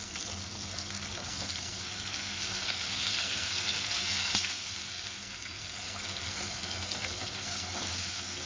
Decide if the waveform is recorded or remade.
remade